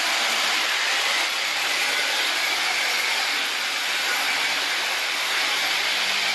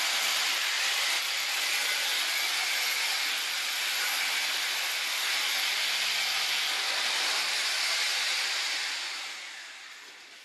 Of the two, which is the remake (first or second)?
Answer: first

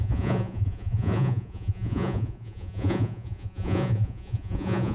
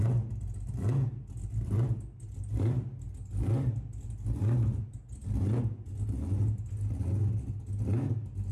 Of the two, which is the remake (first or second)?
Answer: first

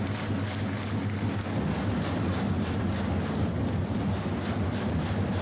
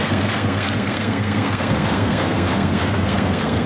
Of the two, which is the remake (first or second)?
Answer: second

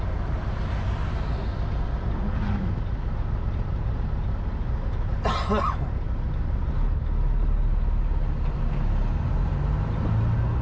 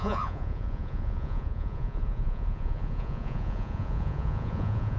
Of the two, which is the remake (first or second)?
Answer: second